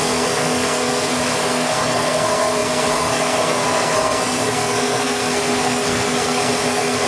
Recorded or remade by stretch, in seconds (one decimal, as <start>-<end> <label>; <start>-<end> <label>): 0.0-7.1 remade